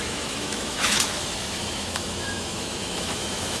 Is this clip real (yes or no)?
no